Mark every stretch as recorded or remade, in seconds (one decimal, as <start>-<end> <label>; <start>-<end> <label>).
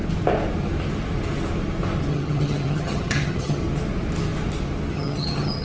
0.0-2.1 recorded; 2.1-3.6 remade; 3.6-4.9 recorded; 4.9-5.6 remade